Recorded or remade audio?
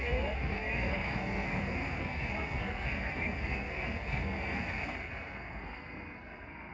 remade